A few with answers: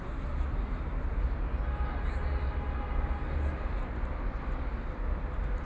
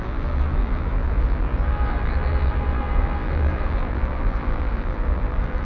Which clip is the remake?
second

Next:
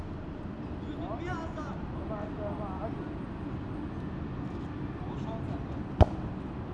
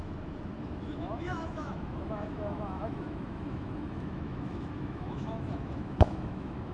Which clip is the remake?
second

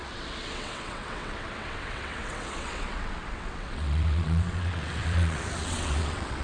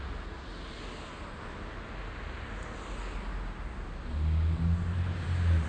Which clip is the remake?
first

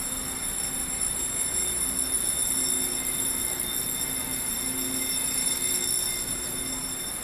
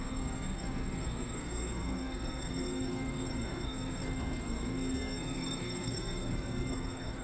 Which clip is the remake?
second